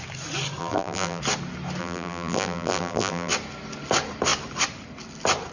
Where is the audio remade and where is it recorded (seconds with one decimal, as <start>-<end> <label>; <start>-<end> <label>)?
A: 0.0-0.6 recorded; 0.6-1.2 remade; 1.2-1.8 recorded; 1.8-3.3 remade; 3.3-5.5 recorded